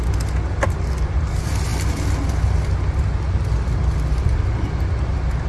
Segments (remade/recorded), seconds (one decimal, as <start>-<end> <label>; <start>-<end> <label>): 0.0-5.5 recorded